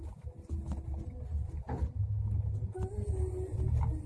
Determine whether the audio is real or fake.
real